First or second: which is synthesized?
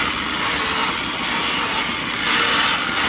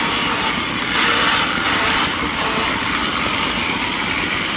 second